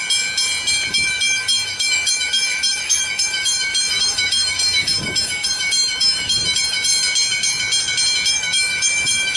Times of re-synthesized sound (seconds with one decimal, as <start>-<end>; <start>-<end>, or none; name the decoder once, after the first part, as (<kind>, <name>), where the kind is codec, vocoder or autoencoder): 0.9-6.9 (autoencoder, DAC-VAE); 8.3-9.4